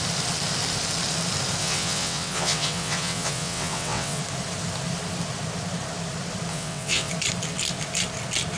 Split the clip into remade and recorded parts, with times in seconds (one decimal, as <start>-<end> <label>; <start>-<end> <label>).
0.0-1.6 recorded; 1.6-4.2 remade; 4.2-6.5 recorded; 6.5-7.1 remade; 7.1-8.6 recorded